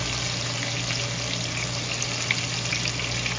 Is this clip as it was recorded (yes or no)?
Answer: yes